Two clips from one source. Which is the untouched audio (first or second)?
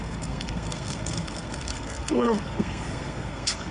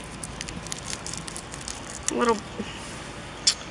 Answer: second